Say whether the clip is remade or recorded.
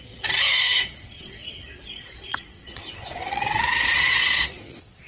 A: remade